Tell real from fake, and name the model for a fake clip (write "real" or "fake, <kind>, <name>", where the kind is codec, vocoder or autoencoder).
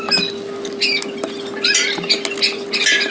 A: real